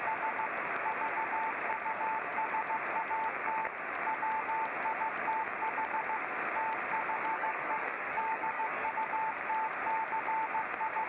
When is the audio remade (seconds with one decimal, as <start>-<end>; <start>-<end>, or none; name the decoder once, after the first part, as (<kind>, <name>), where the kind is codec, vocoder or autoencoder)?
7.3-8.9 (codec, DAC)